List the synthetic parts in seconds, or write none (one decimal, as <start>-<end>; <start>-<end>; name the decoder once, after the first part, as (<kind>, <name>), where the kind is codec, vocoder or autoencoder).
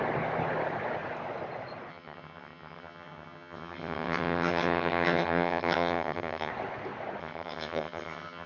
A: 1.9-6.5 (vocoder, HiFi-GAN); 7.2-8.5